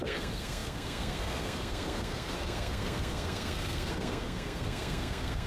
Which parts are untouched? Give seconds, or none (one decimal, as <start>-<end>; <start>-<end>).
none